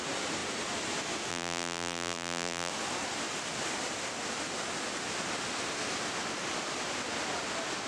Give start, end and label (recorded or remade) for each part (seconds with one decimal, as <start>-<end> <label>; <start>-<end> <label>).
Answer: 0.0-1.3 recorded; 1.3-2.7 remade; 2.7-7.9 recorded

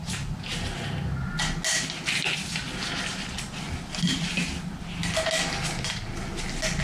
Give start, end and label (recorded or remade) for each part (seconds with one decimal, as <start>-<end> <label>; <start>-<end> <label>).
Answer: 0.0-6.8 recorded

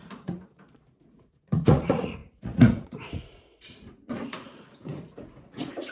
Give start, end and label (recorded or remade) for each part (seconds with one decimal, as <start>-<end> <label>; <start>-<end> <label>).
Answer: 0.0-5.9 remade

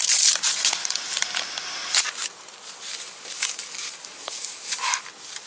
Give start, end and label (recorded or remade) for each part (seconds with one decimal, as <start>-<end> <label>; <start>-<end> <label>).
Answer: 0.0-2.9 recorded; 2.9-5.0 remade; 5.0-5.5 recorded